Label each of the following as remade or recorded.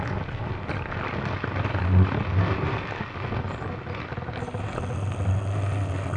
recorded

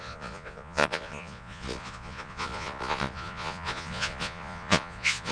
remade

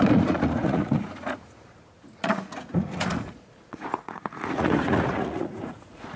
remade